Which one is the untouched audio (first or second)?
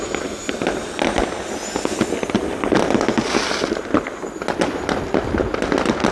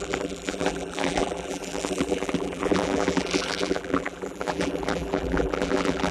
first